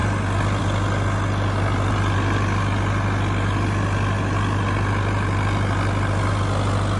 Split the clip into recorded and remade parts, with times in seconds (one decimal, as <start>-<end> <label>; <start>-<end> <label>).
0.0-7.0 recorded